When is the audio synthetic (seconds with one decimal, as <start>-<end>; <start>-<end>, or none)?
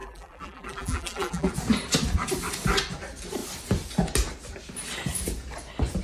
0.0-1.5